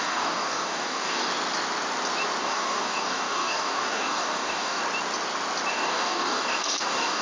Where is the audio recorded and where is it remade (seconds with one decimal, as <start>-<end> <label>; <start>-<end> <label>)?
0.0-1.3 remade; 1.3-2.4 recorded; 2.4-4.8 remade; 4.8-5.7 recorded; 5.7-7.2 remade